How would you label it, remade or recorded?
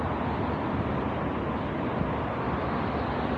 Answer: recorded